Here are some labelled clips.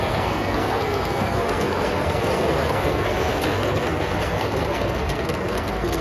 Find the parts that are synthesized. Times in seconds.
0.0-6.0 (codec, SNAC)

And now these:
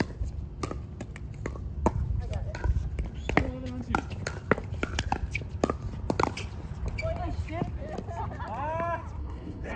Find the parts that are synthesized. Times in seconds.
9.2-9.8 (codec, SNAC)

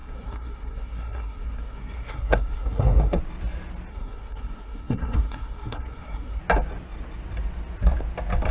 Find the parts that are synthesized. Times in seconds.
0.0-3.2 (codec, SNAC); 3.9-6.4

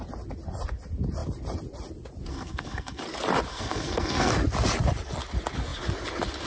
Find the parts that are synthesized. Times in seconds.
2.3-3.0 (codec, SNAC); 3.5-4.3

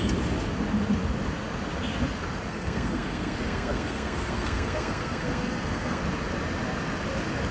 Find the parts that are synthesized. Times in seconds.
2.5-6.0 (codec, SNAC)

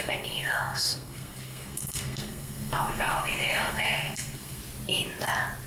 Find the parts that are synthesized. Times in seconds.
0.0-4.6 (codec, SNAC)

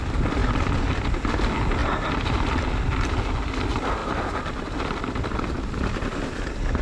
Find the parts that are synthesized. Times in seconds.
none

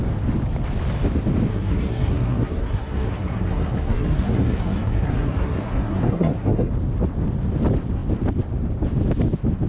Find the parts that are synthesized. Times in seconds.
1.5-6.7 (codec, SNAC)